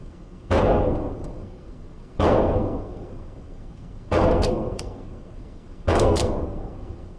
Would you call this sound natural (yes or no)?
no